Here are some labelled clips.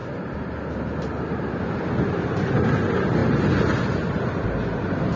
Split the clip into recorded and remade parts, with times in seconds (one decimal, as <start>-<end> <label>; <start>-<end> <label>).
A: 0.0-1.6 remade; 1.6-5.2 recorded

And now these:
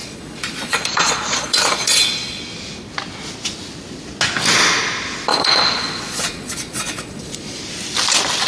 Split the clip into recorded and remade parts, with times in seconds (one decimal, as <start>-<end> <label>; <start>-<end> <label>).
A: 0.0-2.4 remade; 2.4-5.3 recorded; 5.3-7.6 remade; 7.6-8.5 recorded

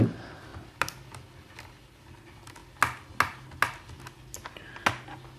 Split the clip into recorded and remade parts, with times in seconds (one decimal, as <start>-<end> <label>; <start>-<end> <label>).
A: 0.0-5.4 recorded

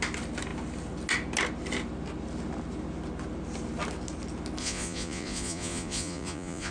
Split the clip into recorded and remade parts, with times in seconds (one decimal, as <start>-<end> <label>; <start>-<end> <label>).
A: 0.0-4.6 recorded; 4.6-6.7 remade